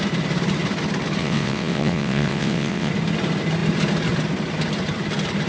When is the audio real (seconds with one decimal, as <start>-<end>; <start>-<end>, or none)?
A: 0.0-1.2; 2.9-5.5